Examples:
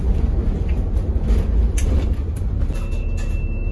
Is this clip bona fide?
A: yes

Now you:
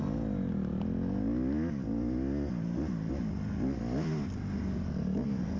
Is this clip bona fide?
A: yes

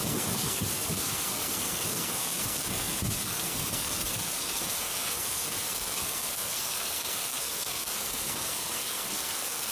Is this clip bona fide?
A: no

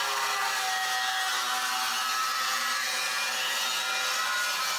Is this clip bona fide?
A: yes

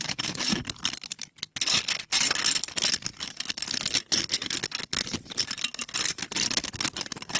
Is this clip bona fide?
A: yes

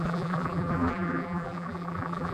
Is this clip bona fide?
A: no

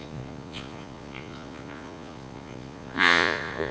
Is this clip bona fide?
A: no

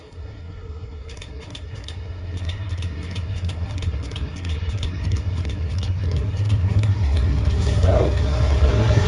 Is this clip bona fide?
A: no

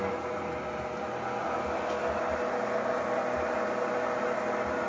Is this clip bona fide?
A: yes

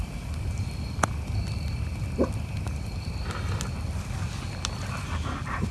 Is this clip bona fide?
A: yes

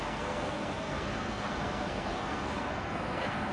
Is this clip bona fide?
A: no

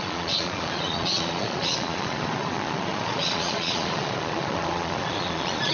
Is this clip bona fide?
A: no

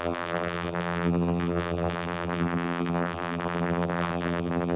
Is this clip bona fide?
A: no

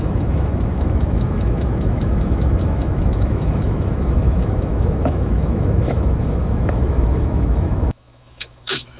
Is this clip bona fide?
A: no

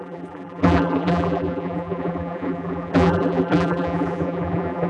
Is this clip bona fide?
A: no